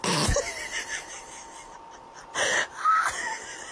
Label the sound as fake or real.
real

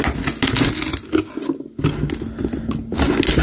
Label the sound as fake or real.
real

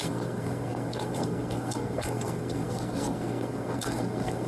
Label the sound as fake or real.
fake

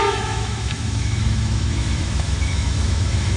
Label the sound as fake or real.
fake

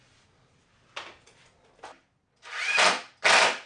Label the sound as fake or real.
real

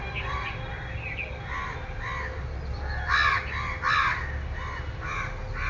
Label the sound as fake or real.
real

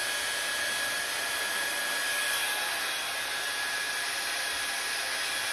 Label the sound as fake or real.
real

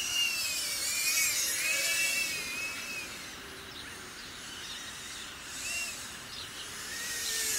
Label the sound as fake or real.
fake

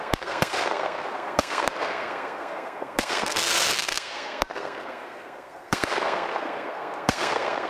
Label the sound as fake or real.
fake